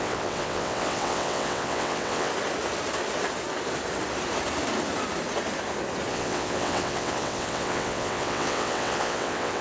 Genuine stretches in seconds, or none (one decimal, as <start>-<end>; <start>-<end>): 2.3-6.1